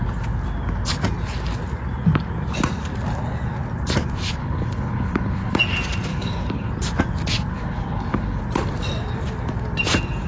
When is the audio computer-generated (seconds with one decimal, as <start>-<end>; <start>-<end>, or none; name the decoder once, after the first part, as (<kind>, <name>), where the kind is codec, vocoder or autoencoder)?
4.4-5.6 (codec, HILCodec); 6.1-6.7; 7.5-8.4